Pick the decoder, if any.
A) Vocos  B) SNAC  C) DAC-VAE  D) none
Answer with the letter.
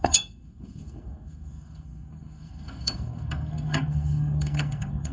B